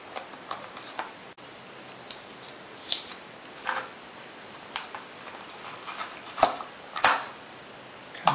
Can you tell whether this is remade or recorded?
recorded